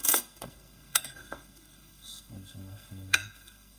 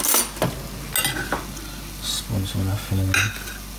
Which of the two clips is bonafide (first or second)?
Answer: second